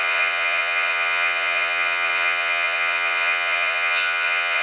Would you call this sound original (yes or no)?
no